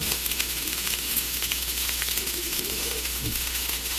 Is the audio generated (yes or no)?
yes